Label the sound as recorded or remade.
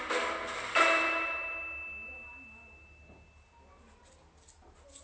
recorded